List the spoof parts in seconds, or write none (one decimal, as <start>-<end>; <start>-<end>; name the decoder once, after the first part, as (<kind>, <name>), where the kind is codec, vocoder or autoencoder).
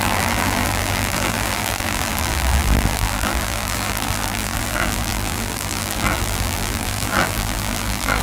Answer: 0.0-8.2 (vocoder, BigVGAN v2)